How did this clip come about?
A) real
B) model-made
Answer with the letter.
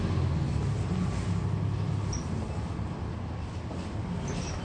A